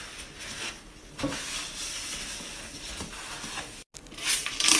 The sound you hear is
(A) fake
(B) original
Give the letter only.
B